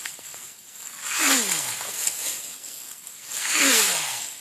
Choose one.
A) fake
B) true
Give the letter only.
A